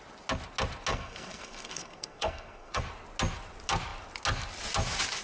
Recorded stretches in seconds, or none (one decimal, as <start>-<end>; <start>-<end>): 0.0-0.9; 2.8-5.2

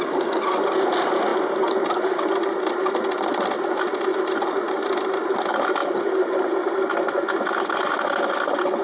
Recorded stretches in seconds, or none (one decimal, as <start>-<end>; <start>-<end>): 0.0-8.8

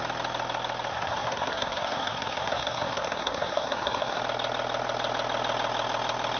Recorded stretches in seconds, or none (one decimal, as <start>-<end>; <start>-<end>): 0.0-0.9; 4.2-6.4

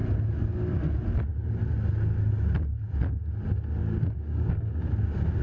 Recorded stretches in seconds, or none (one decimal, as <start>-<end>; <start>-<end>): 0.0-3.8; 4.9-5.4

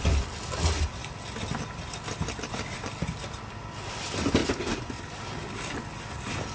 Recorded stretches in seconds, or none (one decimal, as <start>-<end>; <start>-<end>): 0.0-4.4; 5.2-6.5